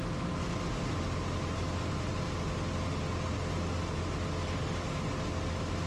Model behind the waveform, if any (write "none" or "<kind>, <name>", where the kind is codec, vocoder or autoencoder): none